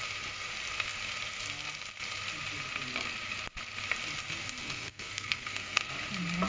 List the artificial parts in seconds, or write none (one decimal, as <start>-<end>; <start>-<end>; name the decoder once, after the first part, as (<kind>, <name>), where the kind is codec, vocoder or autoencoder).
4.6-5.9 (codec, SNAC)